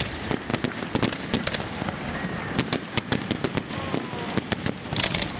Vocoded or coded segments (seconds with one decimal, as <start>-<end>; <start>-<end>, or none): none